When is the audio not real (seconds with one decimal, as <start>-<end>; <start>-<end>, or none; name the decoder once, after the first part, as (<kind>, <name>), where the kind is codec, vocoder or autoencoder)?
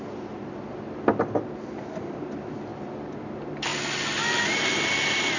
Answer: 0.0-1.1 (vocoder, BigVGAN v2); 2.0-3.7; 4.4-5.4